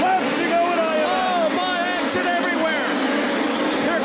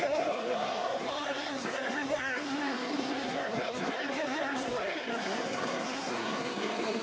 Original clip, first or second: first